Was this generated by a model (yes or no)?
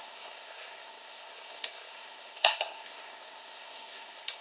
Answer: yes